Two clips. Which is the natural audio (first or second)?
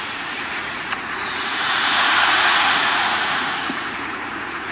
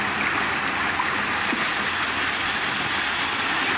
second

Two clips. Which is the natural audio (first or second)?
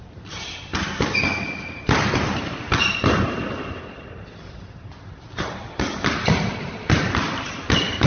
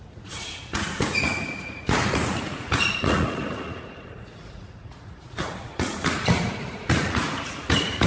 first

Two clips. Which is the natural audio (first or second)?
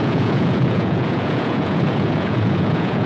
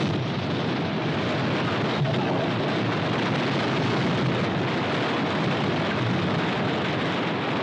second